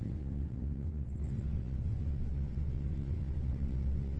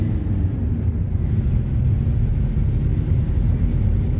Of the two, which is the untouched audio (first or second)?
second